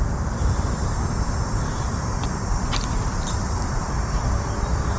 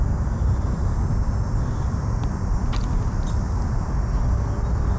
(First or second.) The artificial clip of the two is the first